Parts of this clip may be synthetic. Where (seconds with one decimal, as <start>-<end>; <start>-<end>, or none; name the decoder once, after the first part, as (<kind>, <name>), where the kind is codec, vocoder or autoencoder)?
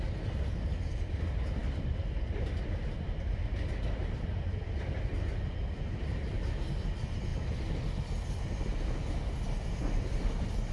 none